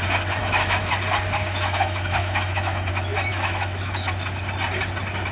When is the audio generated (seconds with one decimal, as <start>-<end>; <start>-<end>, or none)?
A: 0.4-0.9; 1.4-2.9; 3.3-4.1